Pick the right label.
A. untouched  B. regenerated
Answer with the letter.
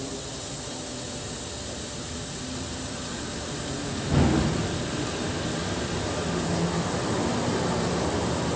A